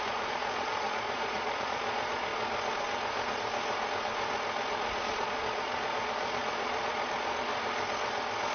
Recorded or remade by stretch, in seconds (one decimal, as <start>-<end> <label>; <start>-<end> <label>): 0.0-2.3 remade; 2.3-5.0 recorded; 5.0-7.5 remade; 7.5-8.5 recorded